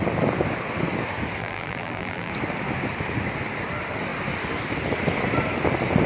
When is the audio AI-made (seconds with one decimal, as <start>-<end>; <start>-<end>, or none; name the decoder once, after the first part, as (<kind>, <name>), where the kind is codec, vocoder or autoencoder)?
1.4-2.3 (vocoder, BigVGAN v2)